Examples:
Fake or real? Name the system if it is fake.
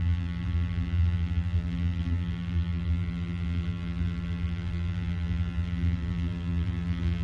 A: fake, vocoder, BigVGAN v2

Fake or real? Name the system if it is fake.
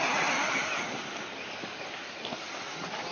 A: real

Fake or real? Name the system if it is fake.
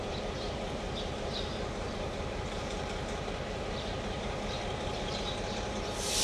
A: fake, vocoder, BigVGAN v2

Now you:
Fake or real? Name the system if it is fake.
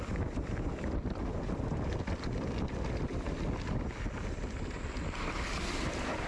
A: real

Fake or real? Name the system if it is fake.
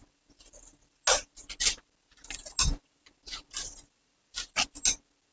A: real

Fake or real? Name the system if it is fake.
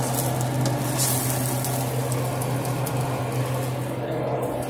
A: real